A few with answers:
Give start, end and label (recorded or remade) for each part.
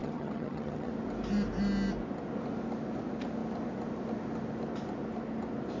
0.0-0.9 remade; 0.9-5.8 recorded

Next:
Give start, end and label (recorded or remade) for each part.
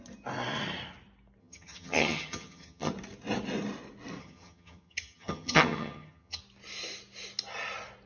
0.0-1.4 recorded; 1.4-2.9 remade; 2.9-4.2 recorded; 4.2-6.4 remade; 6.4-8.1 recorded